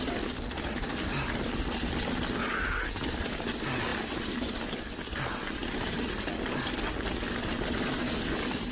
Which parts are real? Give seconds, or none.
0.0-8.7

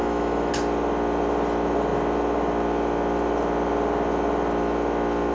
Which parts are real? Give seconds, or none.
0.5-5.3

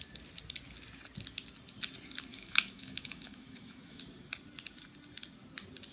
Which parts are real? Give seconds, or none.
0.0-2.3; 4.0-5.9

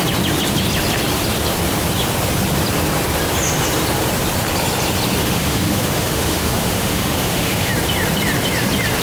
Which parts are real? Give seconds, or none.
0.0-5.2; 7.7-9.0